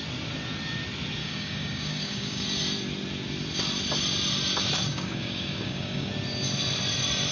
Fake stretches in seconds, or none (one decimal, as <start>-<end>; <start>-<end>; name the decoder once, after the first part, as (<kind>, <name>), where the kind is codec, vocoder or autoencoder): 1.2-2.4 (codec, DAC); 4.9-6.1